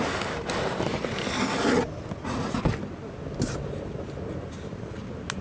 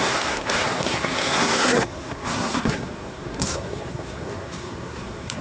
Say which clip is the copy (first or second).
second